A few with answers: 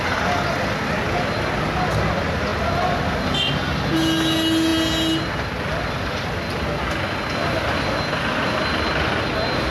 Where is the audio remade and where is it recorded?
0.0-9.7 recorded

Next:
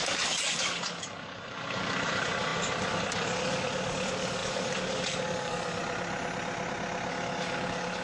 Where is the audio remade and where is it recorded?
0.0-5.8 remade; 5.8-7.1 recorded; 7.1-8.0 remade

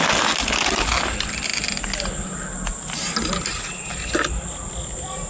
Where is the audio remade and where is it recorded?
0.0-5.3 recorded

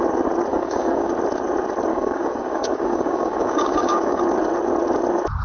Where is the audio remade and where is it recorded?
0.0-0.5 recorded; 0.5-1.1 remade; 1.1-1.9 recorded; 1.9-4.2 remade; 4.2-5.4 recorded

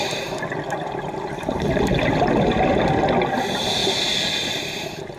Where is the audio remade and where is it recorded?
0.0-5.2 recorded

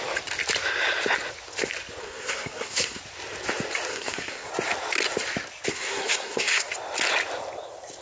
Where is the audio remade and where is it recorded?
0.0-2.0 recorded; 2.0-3.0 remade; 3.0-3.9 recorded; 3.9-4.5 remade; 4.5-5.7 recorded; 5.7-6.7 remade; 6.7-8.0 recorded